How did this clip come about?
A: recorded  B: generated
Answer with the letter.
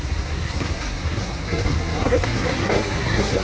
B